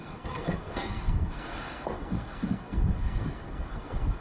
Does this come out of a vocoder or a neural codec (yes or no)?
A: yes